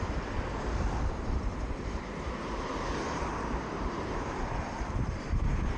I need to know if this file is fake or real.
fake